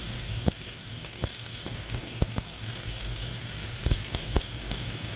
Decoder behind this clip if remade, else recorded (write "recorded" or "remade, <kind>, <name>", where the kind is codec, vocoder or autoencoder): remade, codec, DAC